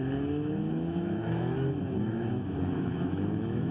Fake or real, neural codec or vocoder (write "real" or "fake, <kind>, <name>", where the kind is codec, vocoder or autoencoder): fake, autoencoder, DAC-VAE